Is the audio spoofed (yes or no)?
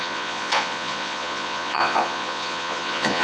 yes